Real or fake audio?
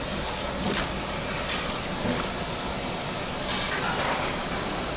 real